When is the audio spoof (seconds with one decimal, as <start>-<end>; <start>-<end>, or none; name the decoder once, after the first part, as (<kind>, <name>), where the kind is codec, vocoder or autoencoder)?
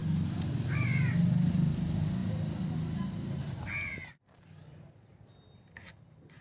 none